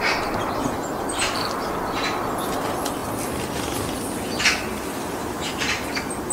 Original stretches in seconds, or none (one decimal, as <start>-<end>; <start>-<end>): 0.0-5.2; 5.8-6.3